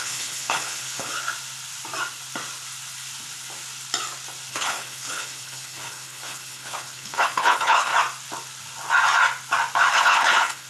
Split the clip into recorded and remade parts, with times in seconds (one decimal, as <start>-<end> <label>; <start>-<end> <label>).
0.0-1.1 remade; 1.1-4.5 recorded; 4.5-7.9 remade; 7.9-9.9 recorded; 9.9-10.7 remade